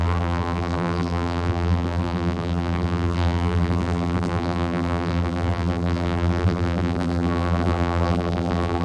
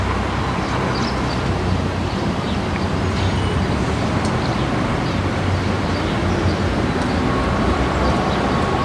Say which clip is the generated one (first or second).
first